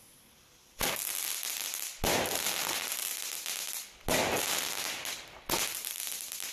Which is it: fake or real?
real